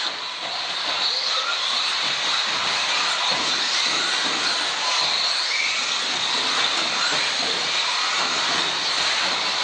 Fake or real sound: real